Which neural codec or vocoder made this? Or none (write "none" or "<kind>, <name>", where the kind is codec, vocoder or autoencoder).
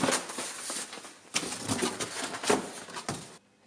none